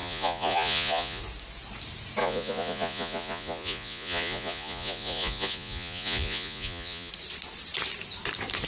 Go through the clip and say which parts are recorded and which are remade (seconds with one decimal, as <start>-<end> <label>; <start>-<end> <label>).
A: 0.0-1.2 remade; 1.2-2.2 recorded; 2.2-7.1 remade; 7.1-8.7 recorded